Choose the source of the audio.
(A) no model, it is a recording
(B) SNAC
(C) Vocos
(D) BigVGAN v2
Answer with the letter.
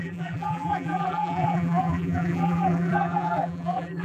D